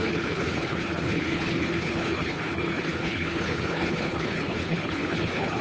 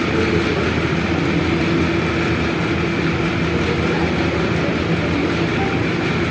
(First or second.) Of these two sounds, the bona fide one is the second